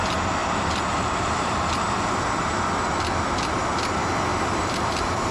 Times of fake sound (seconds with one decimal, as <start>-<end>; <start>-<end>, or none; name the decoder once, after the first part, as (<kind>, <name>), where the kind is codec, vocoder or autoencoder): 0.4-1.7 (vocoder, BigVGAN v2); 4.3-5.3